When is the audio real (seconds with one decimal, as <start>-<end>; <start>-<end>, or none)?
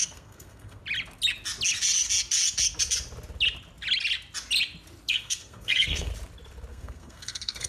0.8-5.1; 6.1-6.7